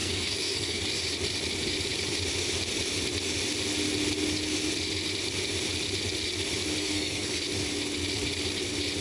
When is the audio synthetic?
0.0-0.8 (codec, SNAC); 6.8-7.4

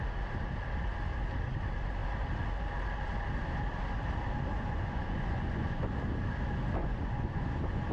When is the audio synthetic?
4.5-5.9 (vocoder, Vocos); 6.8-7.9

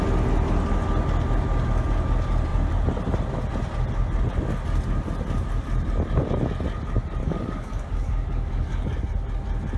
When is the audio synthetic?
7.2-9.0 (codec, DAC)

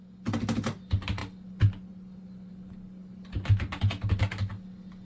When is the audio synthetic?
none

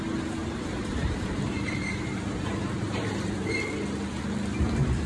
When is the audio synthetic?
0.4-3.5 (vocoder, BigVGAN v2)